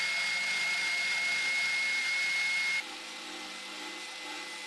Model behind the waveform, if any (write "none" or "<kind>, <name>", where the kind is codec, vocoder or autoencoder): none